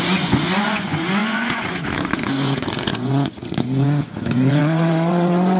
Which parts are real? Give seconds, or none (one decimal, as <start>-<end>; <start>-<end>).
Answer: none